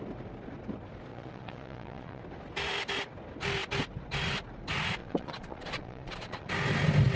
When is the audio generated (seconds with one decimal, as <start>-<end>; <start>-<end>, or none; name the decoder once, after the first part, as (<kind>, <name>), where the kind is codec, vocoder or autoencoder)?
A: 1.1-2.2 (vocoder, Vocos); 5.0-6.5